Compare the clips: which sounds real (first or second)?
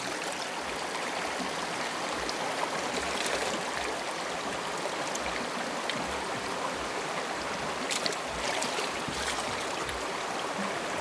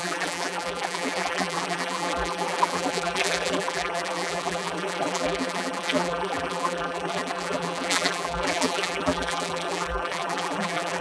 first